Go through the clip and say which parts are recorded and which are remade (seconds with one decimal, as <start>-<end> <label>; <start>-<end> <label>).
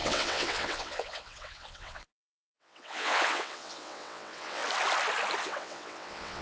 0.0-4.6 remade; 4.6-5.4 recorded; 5.4-6.4 remade